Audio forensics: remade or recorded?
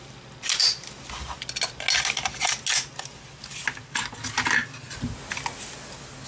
recorded